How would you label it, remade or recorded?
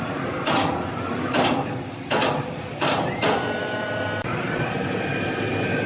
recorded